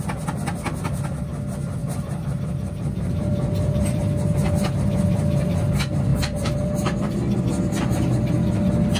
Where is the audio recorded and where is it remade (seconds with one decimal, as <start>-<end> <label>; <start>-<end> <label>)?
0.0-1.8 recorded; 1.8-4.0 remade; 4.0-6.1 recorded; 6.1-7.4 remade; 7.4-9.0 recorded